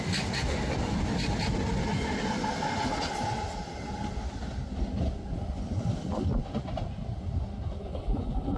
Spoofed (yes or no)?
no